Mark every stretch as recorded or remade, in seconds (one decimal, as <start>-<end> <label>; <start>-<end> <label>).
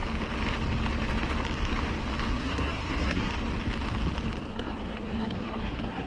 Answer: 0.0-2.3 recorded; 2.3-3.3 remade; 3.3-4.5 recorded; 4.5-6.1 remade